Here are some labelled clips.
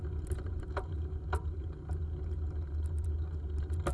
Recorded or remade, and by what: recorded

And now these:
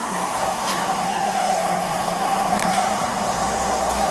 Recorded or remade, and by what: remade, codec, SNAC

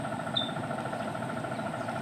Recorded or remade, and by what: recorded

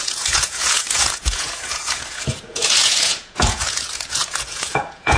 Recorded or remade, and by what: remade, vocoder, Vocos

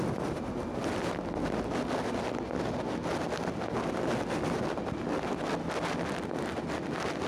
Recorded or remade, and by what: recorded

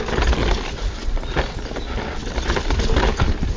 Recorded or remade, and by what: recorded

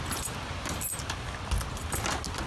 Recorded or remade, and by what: recorded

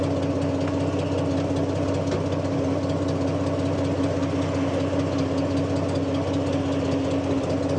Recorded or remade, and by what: recorded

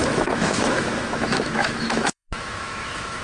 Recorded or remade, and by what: remade, autoencoder, DAC-VAE